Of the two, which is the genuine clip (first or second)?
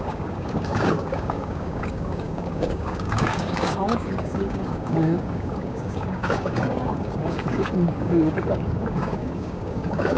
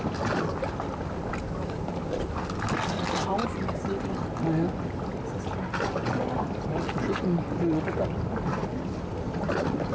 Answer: second